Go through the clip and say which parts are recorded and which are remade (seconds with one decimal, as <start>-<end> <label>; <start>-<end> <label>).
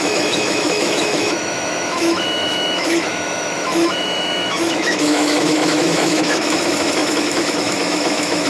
0.0-8.5 remade